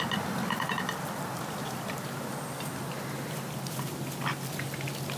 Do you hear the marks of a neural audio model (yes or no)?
no